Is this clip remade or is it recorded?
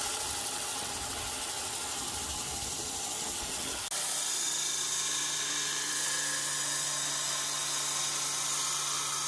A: recorded